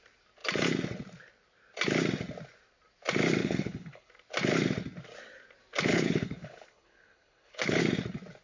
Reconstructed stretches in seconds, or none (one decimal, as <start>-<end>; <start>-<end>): 3.4-4.1; 5.9-7.8